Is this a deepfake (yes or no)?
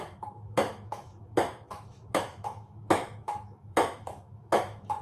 yes